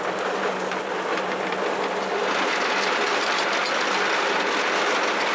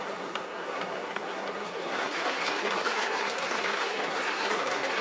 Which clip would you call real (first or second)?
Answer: first